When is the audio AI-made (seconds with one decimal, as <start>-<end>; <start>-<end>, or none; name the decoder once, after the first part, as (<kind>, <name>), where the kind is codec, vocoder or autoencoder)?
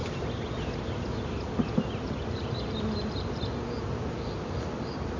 none